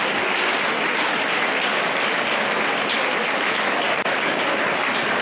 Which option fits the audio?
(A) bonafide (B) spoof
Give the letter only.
A